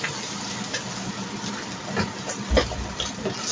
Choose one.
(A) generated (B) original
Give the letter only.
B